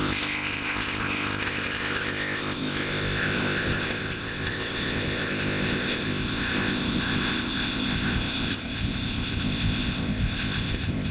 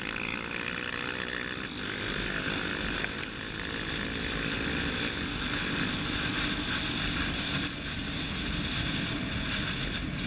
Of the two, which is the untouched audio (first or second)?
second